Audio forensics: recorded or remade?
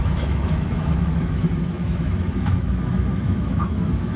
remade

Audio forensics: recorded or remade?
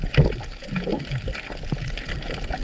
recorded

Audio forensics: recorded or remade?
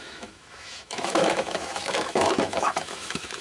remade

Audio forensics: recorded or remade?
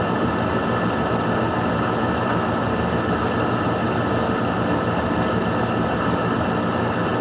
recorded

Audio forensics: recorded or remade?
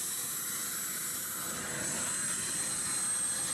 recorded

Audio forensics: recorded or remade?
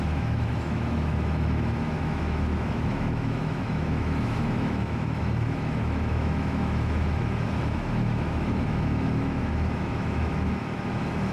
remade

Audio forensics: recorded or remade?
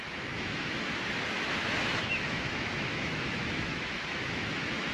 remade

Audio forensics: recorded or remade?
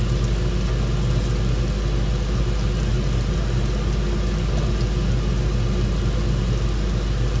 recorded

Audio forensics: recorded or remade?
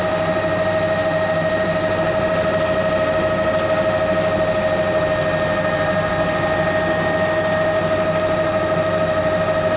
recorded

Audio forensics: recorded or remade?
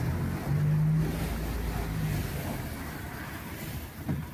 recorded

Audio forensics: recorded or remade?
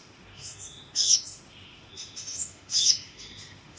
remade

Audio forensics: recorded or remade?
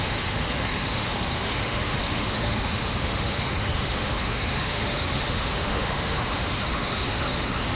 remade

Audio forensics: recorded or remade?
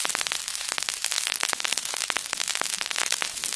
recorded